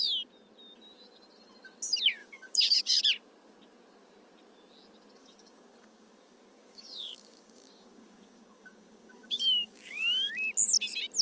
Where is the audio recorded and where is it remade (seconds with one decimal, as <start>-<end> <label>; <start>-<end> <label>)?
0.0-2.2 recorded; 2.2-3.0 remade; 3.0-5.2 recorded; 5.2-10.3 remade; 10.3-11.2 recorded